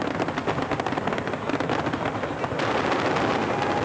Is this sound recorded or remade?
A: recorded